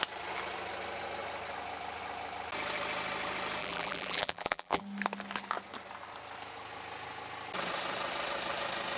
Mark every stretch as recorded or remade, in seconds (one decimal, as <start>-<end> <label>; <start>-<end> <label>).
0.0-3.6 recorded; 3.6-4.8 remade; 4.8-9.0 recorded